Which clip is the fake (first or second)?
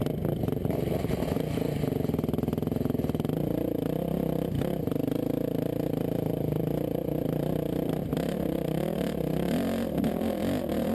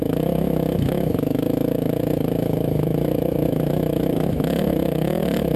second